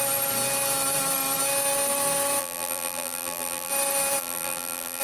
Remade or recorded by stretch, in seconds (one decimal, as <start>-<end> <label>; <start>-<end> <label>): 0.0-2.4 recorded; 2.4-3.7 remade; 3.7-4.2 recorded; 4.2-5.0 remade